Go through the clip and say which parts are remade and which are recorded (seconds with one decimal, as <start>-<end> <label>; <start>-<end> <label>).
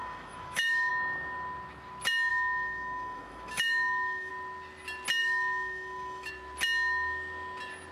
0.0-0.9 remade; 0.9-2.3 recorded; 2.3-4.3 remade; 4.3-5.2 recorded; 5.2-6.3 remade; 6.3-7.9 recorded